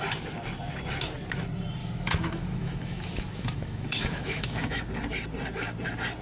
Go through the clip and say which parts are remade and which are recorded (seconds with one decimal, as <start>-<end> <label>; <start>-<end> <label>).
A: 0.0-1.8 recorded; 1.8-4.8 remade; 4.8-6.2 recorded